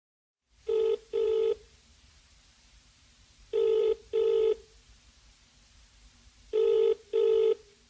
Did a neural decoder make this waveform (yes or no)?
yes